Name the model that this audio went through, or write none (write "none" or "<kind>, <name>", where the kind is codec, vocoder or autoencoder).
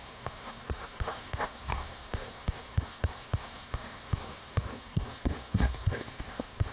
codec, SNAC